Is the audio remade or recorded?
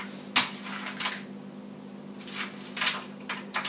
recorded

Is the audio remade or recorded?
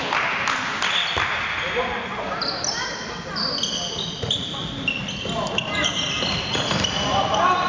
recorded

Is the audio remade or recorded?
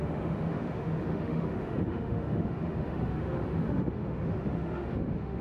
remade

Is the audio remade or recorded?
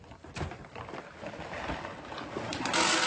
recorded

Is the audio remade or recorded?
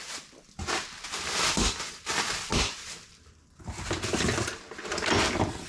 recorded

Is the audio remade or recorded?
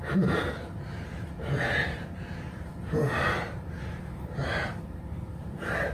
remade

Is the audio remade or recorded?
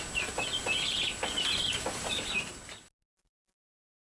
recorded